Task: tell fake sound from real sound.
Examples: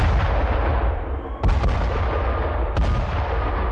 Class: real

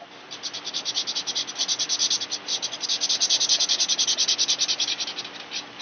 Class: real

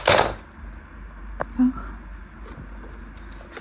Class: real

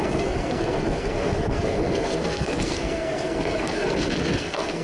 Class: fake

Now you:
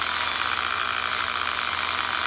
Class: real